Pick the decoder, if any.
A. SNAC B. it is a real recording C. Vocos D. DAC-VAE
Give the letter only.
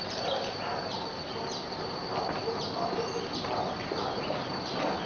B